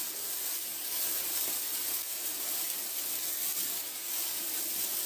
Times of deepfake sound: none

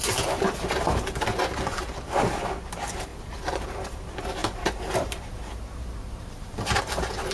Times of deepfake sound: 3.1-4.0 (vocoder, BigVGAN v2); 4.4-6.8

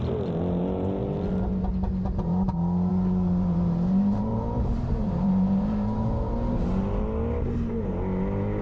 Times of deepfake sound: 2.9-6.3 (vocoder, BigVGAN v2)

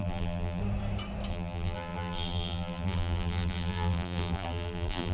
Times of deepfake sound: 0.0-0.6 (vocoder, BigVGAN v2); 1.3-5.1